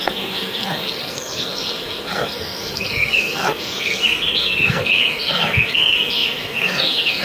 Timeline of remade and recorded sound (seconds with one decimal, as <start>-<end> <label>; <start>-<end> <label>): 0.0-7.2 remade